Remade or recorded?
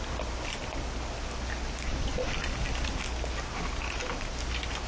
recorded